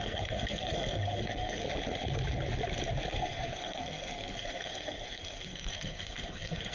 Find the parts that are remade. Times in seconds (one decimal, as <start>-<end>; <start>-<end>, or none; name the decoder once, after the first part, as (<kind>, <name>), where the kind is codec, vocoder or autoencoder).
0.0-1.6 (codec, SNAC); 3.1-6.7